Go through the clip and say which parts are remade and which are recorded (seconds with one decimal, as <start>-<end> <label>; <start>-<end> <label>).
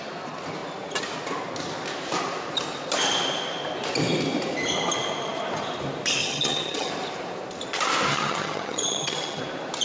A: 0.0-6.2 recorded; 6.2-6.9 remade; 6.9-8.1 recorded; 8.1-9.4 remade; 9.4-9.8 recorded